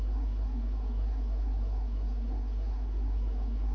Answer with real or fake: fake